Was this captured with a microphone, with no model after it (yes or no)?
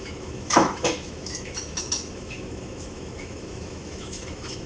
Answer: no